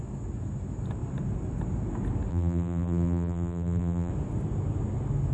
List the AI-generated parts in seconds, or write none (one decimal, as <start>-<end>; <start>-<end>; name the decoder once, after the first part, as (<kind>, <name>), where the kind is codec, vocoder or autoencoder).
2.3-4.1 (vocoder, BigVGAN v2)

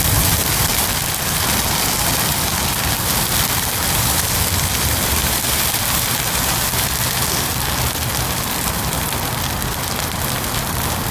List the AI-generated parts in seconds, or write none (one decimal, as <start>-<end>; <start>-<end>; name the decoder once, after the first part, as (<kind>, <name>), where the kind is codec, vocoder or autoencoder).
0.0-11.1 (vocoder, BigVGAN v2)

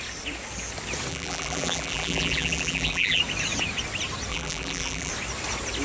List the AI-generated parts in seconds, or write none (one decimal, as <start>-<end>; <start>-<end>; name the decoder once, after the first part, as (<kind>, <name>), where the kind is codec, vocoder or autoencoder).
1.1-3.2 (vocoder, BigVGAN v2); 4.3-5.1

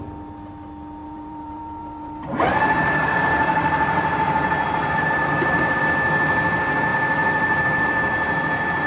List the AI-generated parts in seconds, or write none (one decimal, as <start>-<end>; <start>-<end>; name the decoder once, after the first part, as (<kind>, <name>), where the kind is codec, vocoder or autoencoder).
1.0-5.8 (vocoder, BigVGAN v2); 6.9-8.9

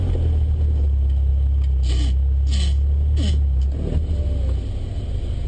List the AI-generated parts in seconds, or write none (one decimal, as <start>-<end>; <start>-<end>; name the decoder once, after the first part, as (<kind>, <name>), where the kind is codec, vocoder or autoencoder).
none